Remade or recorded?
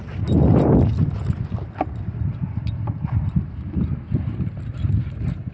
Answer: recorded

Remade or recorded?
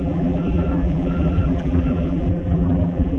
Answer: remade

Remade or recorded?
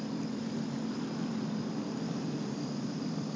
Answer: remade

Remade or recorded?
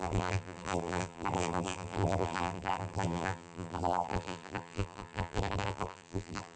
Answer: remade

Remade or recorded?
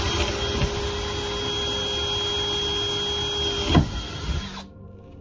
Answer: recorded